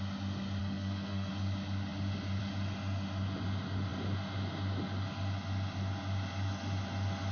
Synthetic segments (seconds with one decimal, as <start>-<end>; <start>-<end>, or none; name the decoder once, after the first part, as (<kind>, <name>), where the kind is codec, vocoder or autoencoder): 0.6-1.3 (codec, SNAC)